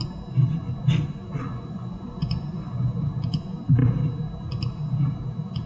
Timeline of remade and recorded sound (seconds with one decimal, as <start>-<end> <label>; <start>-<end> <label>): 0.0-1.5 recorded; 1.5-3.1 remade; 3.1-5.7 recorded